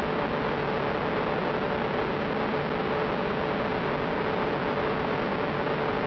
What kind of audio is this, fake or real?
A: real